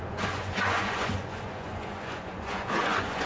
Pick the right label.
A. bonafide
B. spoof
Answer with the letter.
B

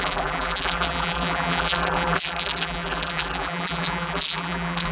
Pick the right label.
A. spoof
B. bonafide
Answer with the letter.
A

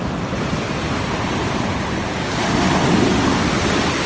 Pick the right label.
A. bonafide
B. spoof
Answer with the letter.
B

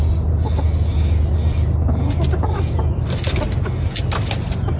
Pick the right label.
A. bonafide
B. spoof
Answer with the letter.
A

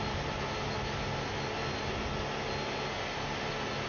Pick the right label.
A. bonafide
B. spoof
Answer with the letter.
A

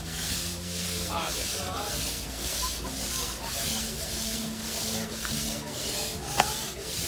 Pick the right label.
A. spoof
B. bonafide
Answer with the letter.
A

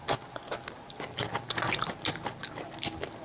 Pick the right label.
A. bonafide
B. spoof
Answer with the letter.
A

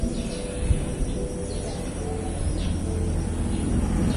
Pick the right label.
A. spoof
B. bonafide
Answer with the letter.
B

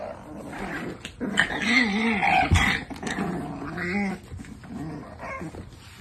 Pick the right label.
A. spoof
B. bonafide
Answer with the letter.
B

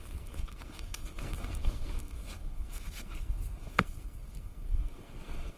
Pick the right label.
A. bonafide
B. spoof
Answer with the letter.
B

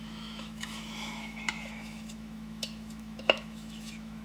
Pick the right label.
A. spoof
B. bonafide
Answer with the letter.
A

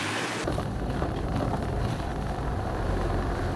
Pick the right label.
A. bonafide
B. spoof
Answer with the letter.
B